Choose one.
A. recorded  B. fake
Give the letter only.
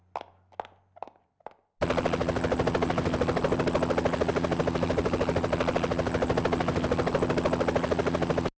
A